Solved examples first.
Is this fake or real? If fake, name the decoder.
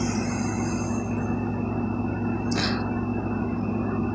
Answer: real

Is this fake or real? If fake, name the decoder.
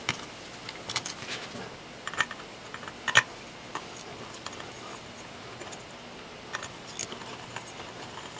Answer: real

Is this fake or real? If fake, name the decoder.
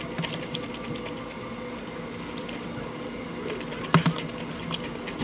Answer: real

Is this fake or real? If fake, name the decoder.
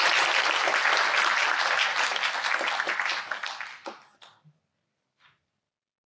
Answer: real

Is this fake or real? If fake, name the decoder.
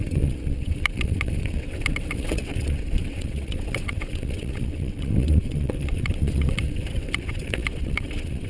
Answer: fake, vocoder, WaveNeXt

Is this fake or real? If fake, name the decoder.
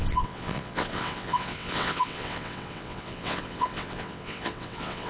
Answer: fake, vocoder, WaveNeXt